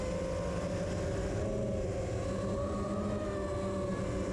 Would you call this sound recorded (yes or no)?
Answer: yes